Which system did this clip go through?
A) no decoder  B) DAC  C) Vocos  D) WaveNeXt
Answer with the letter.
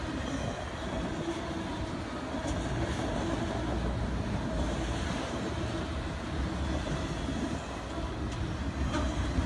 A